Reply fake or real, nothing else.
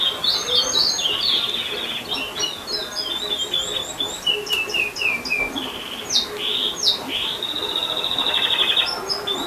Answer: real